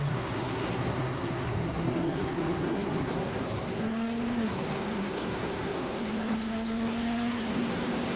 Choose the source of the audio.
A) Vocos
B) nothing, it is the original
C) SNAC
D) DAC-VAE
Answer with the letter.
C